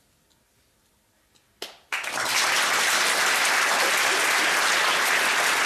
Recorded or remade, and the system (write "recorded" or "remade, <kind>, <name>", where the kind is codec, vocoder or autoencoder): recorded